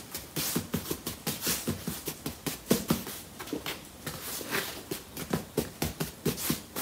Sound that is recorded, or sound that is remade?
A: remade